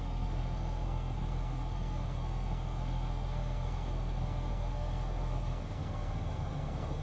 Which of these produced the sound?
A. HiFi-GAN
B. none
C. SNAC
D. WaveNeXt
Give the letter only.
C